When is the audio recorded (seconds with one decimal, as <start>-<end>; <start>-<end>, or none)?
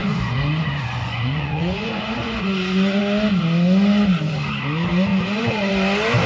3.0-5.1; 5.7-6.3